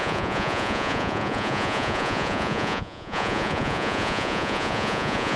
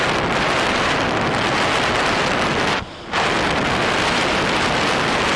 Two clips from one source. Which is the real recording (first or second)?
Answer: second